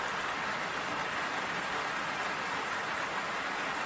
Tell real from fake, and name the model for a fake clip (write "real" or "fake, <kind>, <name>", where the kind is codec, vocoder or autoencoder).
real